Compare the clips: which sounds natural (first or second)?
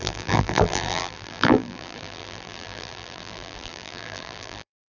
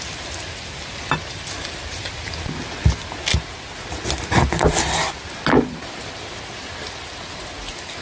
second